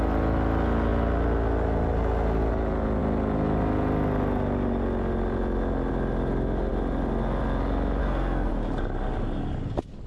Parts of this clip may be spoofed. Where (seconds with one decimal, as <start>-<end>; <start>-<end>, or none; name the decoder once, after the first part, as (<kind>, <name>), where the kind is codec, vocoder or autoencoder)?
8.0-8.5 (codec, SNAC)